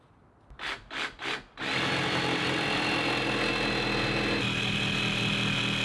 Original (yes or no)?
yes